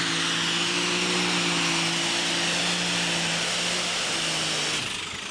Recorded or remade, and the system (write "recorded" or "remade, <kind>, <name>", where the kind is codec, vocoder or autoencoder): recorded